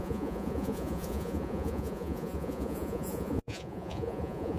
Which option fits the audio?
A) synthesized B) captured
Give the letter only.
A